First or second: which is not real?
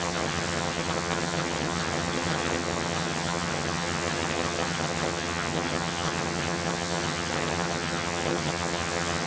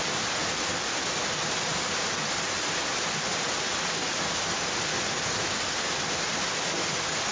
first